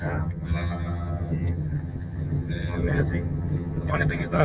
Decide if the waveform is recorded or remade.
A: remade